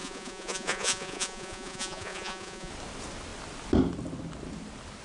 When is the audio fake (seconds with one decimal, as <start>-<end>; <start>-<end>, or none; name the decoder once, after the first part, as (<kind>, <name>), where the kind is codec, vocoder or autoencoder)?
0.0-2.7 (vocoder, Vocos)